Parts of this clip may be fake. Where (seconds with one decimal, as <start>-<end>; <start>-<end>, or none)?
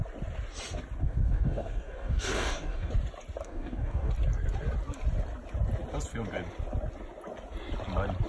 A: 1.0-2.9; 3.4-4.1